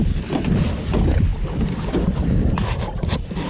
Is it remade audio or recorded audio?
recorded